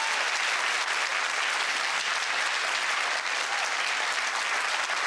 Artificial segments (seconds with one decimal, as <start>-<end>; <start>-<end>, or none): none

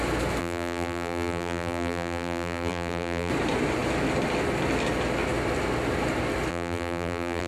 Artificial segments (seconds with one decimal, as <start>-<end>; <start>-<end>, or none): 0.4-3.3; 6.5-7.5

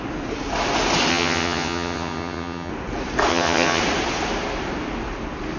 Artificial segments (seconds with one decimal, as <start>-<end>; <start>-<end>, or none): 1.1-2.7; 3.3-3.8

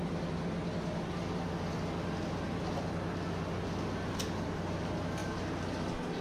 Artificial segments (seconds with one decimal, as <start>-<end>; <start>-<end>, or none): none

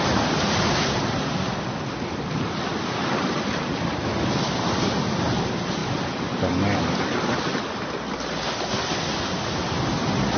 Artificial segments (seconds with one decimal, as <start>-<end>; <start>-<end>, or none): none

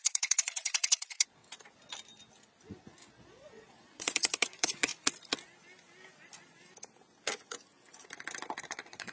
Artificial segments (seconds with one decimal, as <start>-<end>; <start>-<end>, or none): 0.0-1.4; 3.1-4.9; 8.6-9.1

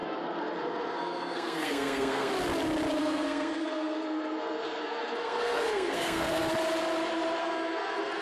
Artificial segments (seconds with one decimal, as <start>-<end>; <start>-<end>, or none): 0.0-2.3; 3.0-6.5; 7.4-8.2